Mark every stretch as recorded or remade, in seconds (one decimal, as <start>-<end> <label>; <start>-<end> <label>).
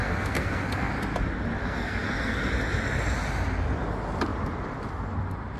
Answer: 0.0-0.9 remade; 0.9-1.6 recorded; 1.6-2.5 remade; 2.5-5.6 recorded